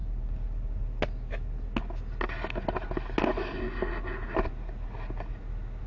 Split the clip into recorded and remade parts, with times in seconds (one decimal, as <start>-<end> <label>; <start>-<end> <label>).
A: 0.0-5.9 recorded